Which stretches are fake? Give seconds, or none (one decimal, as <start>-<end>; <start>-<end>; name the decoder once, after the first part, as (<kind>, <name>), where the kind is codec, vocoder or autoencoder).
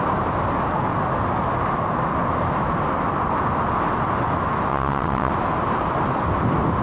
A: 4.7-5.3 (vocoder, WaveNeXt)